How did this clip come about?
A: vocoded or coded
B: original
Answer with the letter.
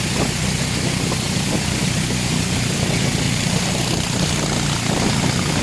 B